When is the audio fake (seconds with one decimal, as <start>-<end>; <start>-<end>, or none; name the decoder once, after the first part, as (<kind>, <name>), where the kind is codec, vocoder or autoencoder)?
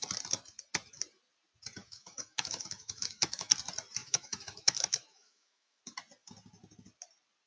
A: 1.8-3.5 (autoencoder, DAC-VAE); 4.0-5.8